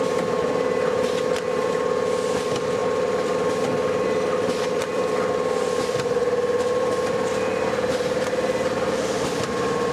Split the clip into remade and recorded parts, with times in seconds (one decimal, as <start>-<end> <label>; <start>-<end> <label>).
0.0-9.9 remade